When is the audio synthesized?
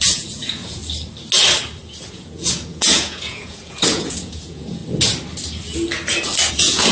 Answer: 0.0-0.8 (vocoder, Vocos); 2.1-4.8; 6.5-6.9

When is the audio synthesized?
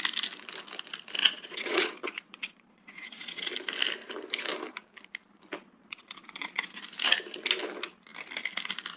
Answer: 1.2-3.5 (vocoder, Vocos); 5.6-6.8